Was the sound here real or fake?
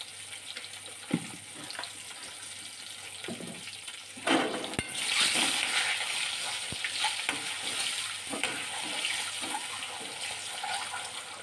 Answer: real